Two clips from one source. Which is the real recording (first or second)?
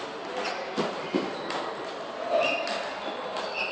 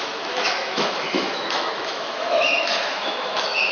first